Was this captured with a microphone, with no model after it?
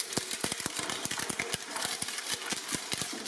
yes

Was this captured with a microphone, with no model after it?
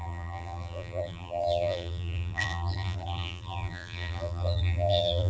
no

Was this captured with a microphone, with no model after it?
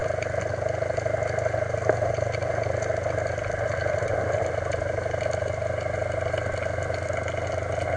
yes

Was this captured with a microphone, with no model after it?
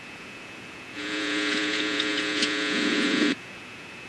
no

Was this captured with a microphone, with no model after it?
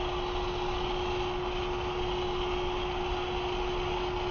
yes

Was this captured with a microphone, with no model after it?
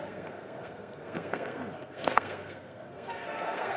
no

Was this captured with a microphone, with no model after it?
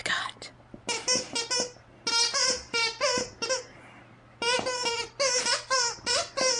yes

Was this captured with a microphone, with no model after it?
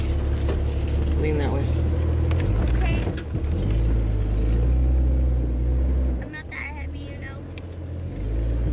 yes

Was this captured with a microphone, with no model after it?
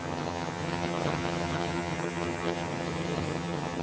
no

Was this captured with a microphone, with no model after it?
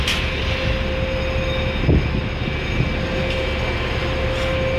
yes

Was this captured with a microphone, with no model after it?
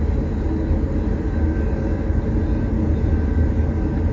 yes